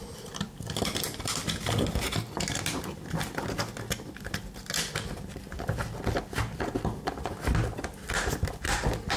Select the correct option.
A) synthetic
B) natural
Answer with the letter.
B